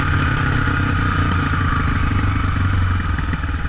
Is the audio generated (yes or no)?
no